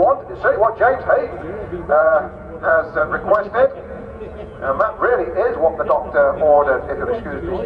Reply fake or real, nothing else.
fake